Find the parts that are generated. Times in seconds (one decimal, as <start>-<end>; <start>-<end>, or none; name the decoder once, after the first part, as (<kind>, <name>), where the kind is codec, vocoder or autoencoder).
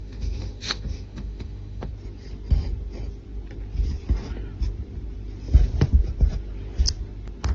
0.0-1.9 (autoencoder, DAC-VAE)